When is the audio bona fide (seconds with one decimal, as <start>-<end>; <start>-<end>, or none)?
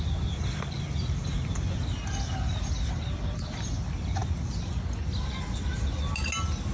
0.0-6.7